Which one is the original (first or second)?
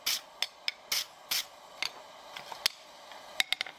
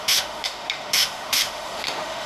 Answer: first